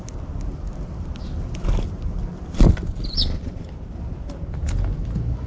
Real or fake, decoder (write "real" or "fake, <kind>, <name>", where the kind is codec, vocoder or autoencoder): real